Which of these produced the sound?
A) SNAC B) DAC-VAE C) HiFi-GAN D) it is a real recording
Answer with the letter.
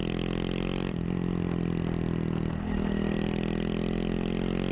D